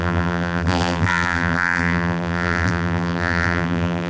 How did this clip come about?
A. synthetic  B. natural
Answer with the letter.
A